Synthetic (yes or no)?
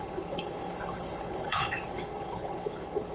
yes